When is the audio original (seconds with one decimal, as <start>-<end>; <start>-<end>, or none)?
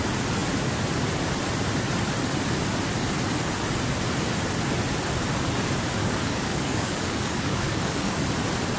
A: 0.0-6.0; 8.2-8.8